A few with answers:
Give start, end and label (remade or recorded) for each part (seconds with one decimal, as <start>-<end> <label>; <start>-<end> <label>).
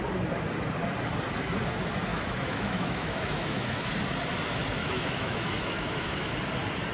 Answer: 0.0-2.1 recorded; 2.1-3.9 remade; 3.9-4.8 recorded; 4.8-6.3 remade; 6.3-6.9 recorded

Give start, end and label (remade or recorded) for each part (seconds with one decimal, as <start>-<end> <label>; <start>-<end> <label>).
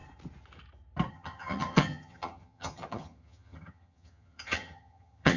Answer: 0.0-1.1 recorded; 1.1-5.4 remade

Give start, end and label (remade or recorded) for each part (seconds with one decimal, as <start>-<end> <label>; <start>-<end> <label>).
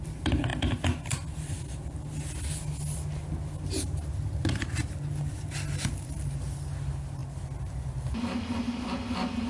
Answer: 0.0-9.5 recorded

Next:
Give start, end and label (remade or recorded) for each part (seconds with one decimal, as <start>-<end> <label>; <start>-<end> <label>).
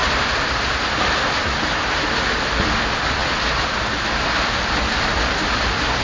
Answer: 0.0-1.9 recorded; 1.9-3.2 remade; 3.2-4.3 recorded; 4.3-6.0 remade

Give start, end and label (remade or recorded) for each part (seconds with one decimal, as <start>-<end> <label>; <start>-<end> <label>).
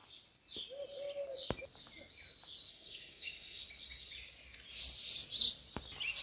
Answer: 0.0-2.7 recorded; 2.7-3.6 remade; 3.6-6.2 recorded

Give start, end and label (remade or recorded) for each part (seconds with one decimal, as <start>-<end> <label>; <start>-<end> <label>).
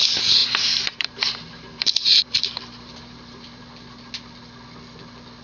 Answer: 0.0-0.4 recorded; 0.4-3.6 remade; 3.6-5.4 recorded